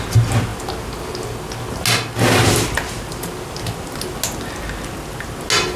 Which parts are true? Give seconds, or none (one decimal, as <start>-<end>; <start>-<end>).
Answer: 0.0-5.8